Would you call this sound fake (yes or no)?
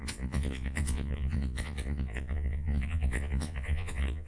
yes